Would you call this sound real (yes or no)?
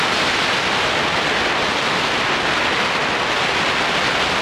yes